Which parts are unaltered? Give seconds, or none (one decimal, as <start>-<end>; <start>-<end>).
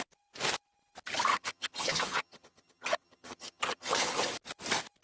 0.0-1.3; 4.3-5.0